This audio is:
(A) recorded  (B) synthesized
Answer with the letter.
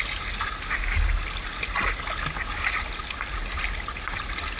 A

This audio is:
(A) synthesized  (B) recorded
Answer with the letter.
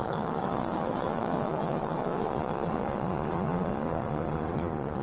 A